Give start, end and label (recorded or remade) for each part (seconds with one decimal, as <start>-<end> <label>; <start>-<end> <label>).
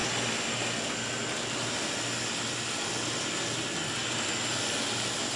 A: 0.0-5.4 recorded